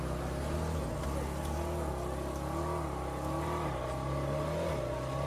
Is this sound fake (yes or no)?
no